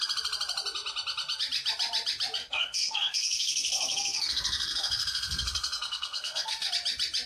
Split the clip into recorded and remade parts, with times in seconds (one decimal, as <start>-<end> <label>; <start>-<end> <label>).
0.0-2.4 recorded; 2.4-6.7 remade; 6.7-7.3 recorded